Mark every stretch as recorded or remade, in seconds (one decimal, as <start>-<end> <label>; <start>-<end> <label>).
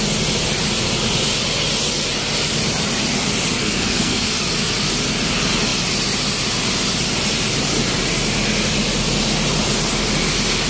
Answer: 0.0-3.6 recorded; 3.6-4.4 remade; 4.4-10.7 recorded